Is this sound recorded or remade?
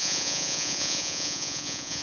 remade